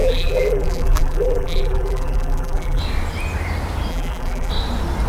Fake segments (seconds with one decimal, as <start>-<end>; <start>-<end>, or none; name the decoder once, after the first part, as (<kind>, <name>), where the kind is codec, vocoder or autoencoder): 0.0-2.8 (vocoder, BigVGAN v2); 3.9-4.5